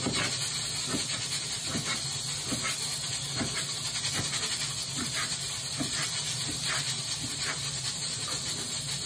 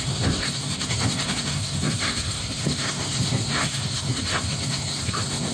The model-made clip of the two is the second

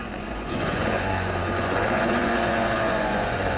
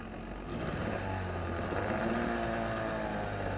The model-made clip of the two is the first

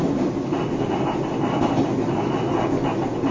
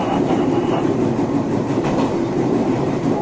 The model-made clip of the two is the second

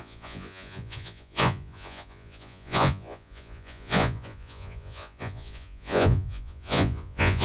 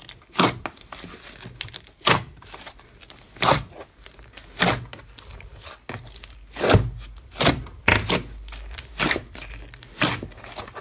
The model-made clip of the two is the first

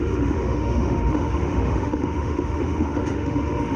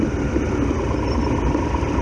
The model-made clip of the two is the first